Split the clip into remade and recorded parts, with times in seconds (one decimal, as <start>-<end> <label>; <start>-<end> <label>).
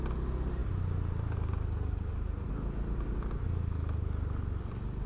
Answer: 0.0-5.1 recorded